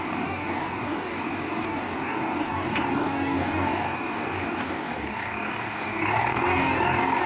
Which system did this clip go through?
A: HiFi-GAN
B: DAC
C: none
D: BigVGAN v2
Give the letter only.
B